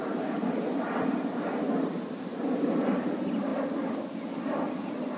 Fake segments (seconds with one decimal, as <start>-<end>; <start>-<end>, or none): 1.9-2.6